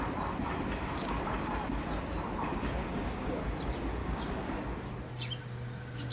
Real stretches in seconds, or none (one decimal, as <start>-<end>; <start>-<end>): 0.0-2.8; 3.4-4.0; 4.6-6.1